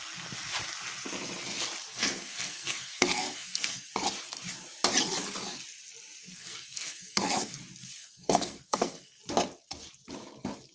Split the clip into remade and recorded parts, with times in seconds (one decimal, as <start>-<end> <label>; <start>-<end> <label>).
0.0-1.9 recorded; 1.9-3.9 remade; 3.9-6.2 recorded; 6.2-7.6 remade; 7.6-8.0 recorded; 8.0-9.2 remade; 9.2-10.7 recorded